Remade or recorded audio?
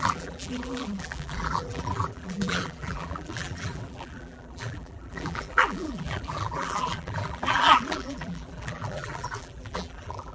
remade